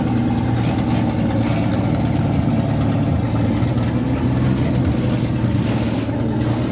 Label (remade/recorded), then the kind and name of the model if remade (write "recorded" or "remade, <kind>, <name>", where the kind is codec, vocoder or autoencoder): recorded